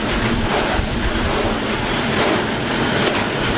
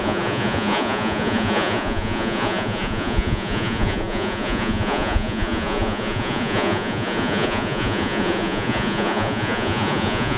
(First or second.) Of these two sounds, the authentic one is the first